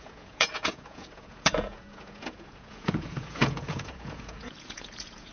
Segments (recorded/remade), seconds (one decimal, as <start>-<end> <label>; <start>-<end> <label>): 0.0-5.3 remade